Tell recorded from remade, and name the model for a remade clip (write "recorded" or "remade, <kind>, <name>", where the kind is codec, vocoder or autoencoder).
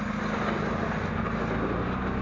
recorded